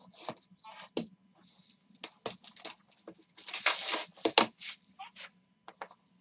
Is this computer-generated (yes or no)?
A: no